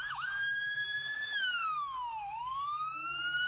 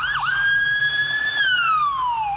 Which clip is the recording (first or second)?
second